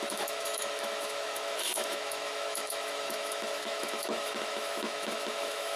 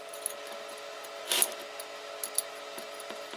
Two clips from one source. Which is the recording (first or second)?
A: second